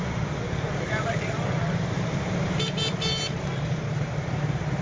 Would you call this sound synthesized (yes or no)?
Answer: yes